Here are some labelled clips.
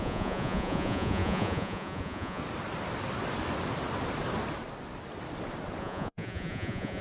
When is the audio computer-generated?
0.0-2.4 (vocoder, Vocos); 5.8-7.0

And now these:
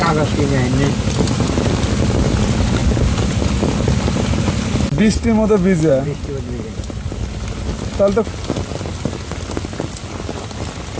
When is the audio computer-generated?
none